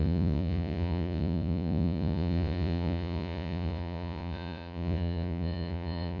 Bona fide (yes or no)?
no